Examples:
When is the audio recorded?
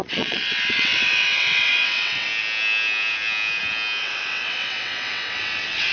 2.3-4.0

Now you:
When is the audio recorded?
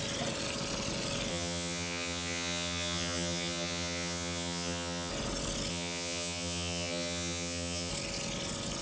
0.0-1.3; 5.1-5.7; 7.9-8.8